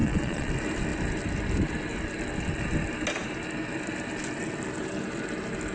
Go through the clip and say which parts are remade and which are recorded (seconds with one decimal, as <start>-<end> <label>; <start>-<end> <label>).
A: 0.0-0.5 remade; 0.5-5.7 recorded